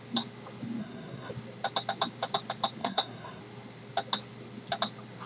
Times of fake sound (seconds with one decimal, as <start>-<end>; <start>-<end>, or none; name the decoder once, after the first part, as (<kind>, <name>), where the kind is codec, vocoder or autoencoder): 0.8-1.3 (codec, SNAC); 2.8-3.4